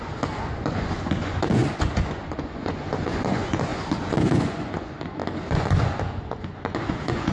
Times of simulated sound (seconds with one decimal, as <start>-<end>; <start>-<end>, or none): 0.0-7.3